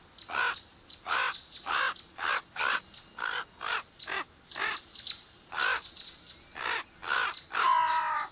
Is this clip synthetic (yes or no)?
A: no